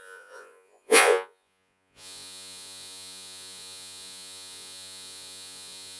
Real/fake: fake